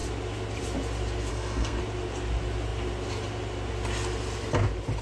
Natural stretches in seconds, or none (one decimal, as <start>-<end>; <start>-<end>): 0.0-1.3; 1.8-5.0